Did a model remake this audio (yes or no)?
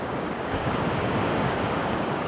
yes